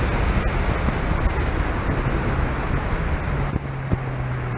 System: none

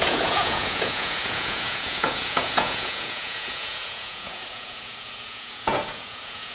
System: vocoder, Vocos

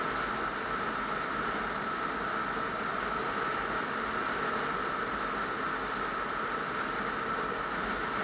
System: none